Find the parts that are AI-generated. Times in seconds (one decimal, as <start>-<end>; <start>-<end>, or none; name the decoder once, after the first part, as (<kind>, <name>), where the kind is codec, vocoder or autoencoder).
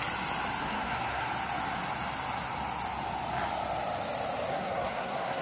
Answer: 0.6-1.3 (codec, SNAC); 4.5-5.4